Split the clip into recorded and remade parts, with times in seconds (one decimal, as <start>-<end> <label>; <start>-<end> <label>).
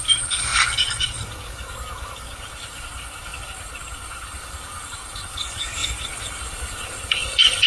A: 0.0-7.7 remade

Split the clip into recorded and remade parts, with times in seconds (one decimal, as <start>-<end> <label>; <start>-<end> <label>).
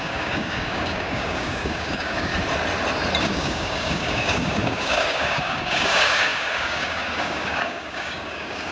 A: 0.0-2.3 remade; 2.3-3.2 recorded; 3.2-8.7 remade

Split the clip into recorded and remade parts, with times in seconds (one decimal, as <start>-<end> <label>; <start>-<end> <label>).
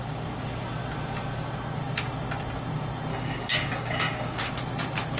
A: 0.0-3.1 recorded; 3.1-4.4 remade; 4.4-5.2 recorded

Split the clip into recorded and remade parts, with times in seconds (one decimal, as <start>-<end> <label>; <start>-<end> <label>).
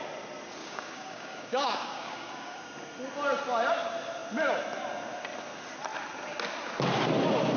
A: 0.0-0.6 recorded; 0.6-2.6 remade; 2.6-7.6 recorded